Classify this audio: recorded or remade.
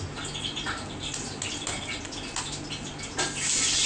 recorded